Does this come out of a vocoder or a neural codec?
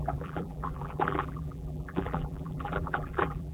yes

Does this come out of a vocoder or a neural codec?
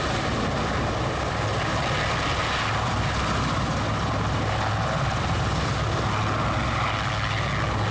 no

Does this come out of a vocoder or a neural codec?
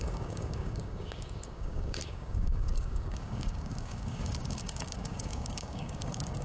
yes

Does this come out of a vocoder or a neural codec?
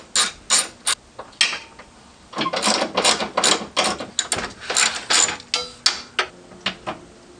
no